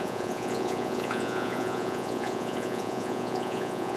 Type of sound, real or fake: fake